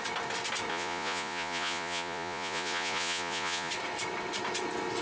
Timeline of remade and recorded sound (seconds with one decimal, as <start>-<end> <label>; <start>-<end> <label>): 0.0-0.7 recorded; 0.7-3.7 remade; 3.7-5.0 recorded